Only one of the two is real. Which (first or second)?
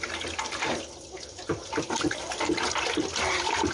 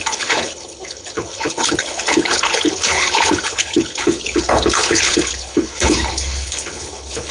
first